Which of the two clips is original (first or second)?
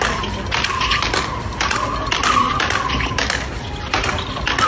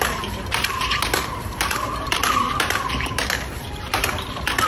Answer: first